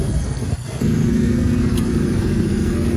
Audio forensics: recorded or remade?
remade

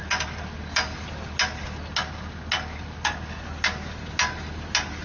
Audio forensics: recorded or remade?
recorded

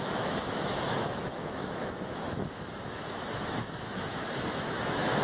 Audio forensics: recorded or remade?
remade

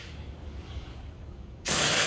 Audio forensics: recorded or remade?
remade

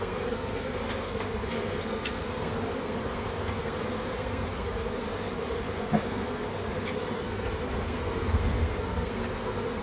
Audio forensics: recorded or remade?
remade